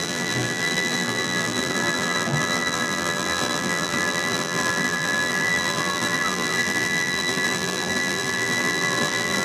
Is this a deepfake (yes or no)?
yes